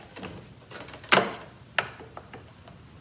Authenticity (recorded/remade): recorded